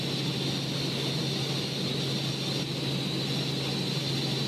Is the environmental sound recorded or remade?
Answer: recorded